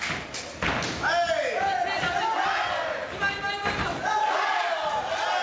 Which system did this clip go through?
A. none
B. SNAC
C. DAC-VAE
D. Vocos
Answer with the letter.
A